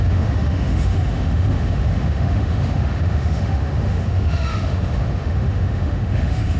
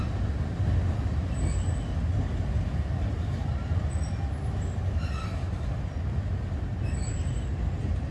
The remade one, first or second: first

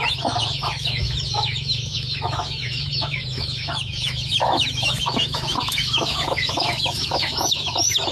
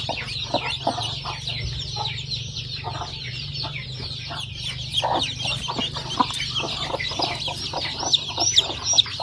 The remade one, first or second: first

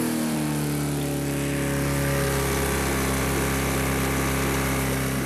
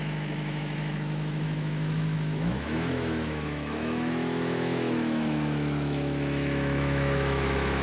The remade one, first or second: second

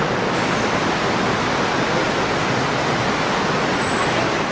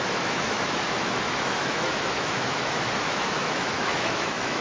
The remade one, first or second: second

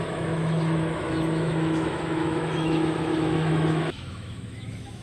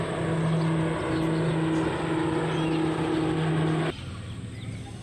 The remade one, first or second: first